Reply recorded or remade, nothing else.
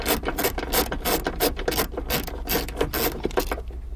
recorded